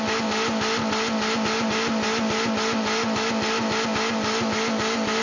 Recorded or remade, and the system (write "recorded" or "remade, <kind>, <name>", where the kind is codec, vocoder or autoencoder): recorded